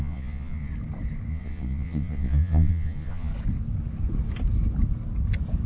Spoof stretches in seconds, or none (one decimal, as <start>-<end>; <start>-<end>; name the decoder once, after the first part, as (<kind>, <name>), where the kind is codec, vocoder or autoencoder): 0.0-0.7 (vocoder, Vocos); 1.3-3.3